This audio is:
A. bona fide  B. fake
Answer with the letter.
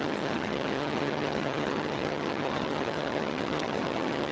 B